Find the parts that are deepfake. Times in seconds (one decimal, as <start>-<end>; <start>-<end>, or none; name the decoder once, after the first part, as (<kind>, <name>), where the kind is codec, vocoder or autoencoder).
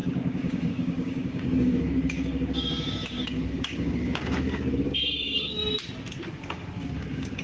0.0-5.6 (codec, DAC); 6.3-7.4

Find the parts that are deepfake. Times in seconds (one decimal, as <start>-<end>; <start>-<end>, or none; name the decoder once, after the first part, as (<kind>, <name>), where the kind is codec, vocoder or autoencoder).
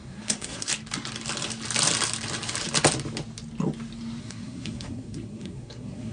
0.0-0.7 (codec, SNAC); 4.2-6.1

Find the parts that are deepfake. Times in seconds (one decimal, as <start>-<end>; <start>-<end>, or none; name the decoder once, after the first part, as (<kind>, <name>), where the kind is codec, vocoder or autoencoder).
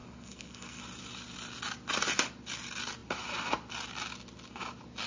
0.0-0.8 (codec, SNAC)